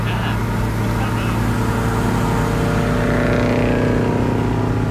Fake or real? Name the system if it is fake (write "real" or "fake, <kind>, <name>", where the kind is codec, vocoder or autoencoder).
real